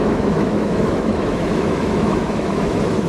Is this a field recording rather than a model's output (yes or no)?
no